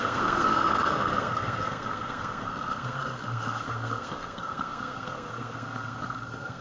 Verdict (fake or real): fake